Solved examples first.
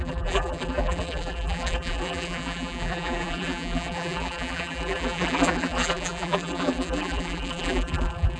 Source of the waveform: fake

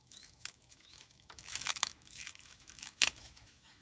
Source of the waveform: fake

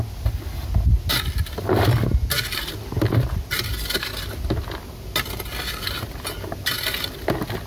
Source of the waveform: real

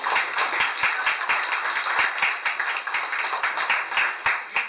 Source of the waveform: real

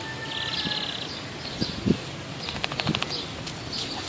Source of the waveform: real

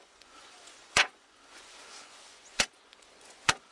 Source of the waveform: fake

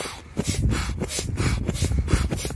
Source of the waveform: real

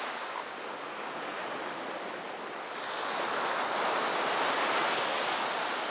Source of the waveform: real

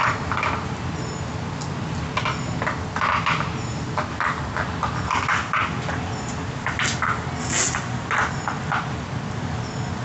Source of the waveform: real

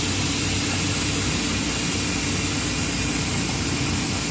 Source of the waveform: real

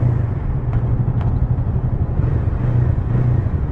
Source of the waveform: fake